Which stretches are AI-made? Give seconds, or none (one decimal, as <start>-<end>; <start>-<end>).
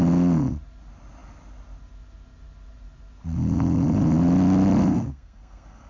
4.9-5.9